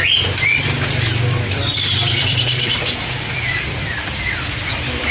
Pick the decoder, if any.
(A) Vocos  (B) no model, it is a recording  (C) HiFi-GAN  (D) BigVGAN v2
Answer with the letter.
D